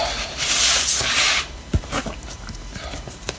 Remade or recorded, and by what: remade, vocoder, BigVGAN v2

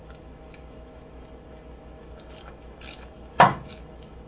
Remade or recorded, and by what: remade, autoencoder, DAC-VAE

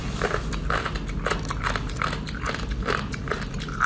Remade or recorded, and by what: recorded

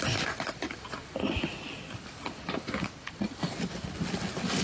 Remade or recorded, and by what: recorded